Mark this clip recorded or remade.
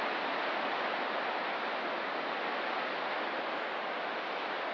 recorded